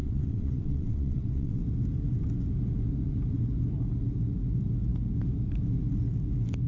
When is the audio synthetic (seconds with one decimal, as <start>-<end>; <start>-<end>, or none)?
0.0-1.6